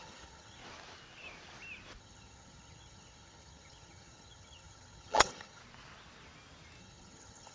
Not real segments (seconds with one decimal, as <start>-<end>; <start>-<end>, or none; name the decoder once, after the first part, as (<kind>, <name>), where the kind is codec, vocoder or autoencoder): 0.0-0.6 (vocoder, HiFi-GAN); 2.0-5.6; 6.8-7.5